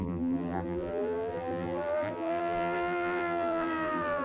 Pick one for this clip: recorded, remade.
remade